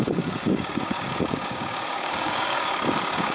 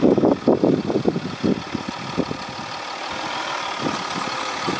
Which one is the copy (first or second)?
first